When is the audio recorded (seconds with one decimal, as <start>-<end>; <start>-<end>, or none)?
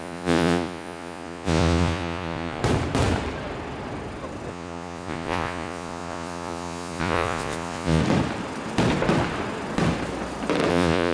2.6-4.5; 8.0-10.7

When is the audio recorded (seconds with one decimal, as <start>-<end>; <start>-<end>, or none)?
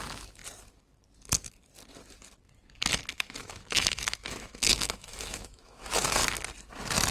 0.4-3.1; 6.2-7.1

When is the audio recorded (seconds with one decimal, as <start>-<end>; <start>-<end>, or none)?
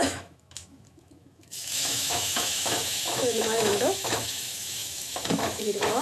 none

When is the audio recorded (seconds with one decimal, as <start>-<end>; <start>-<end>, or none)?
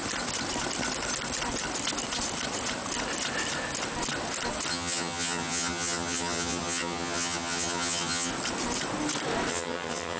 0.0-4.7; 8.3-9.5